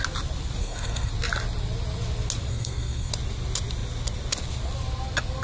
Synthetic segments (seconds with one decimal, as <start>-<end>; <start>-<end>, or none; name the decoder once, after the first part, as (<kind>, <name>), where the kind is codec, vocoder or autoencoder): 0.6-1.1 (codec, SNAC); 2.5-3.1